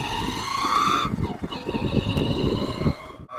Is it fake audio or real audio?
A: real